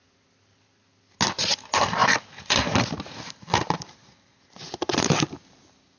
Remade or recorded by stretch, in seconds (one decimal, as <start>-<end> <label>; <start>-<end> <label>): 0.0-6.0 recorded